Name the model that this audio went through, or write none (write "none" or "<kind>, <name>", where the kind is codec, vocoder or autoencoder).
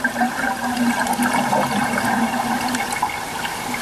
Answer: none